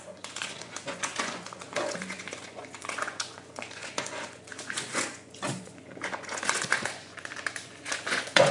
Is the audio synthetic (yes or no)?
yes